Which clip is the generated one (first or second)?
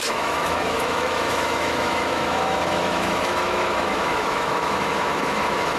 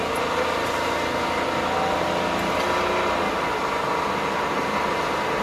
first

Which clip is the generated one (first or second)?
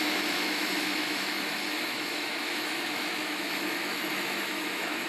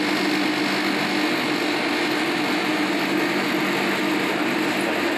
first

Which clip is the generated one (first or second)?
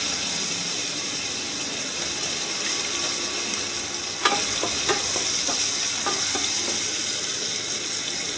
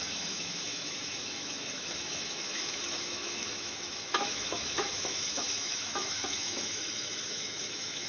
second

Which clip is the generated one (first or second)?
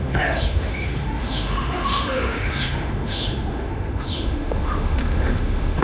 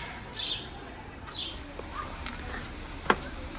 first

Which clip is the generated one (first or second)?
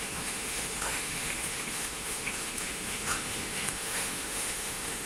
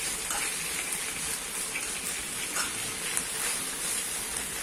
first